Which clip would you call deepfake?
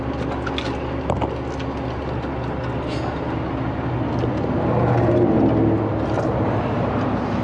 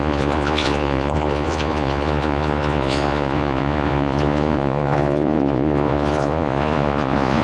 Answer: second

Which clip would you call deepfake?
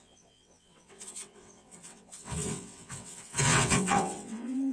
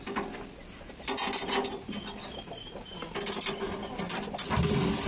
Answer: first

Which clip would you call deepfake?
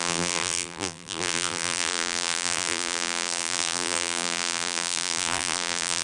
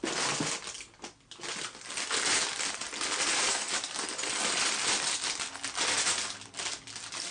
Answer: first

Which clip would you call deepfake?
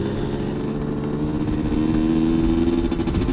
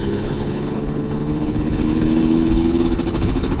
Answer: second